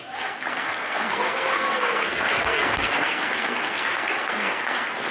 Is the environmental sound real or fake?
fake